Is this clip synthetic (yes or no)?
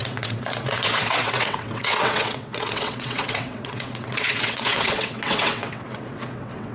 yes